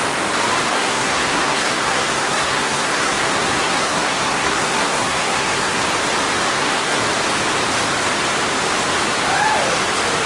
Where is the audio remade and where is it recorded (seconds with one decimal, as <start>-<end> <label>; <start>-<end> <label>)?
0.0-0.7 recorded; 0.7-5.8 remade; 5.8-6.5 recorded; 6.5-7.0 remade; 7.0-10.3 recorded